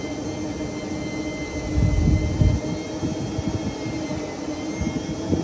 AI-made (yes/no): no